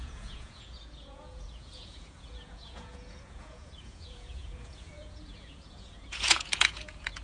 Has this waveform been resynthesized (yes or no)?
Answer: yes